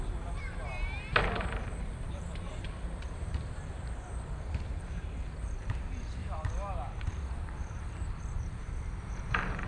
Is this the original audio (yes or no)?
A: no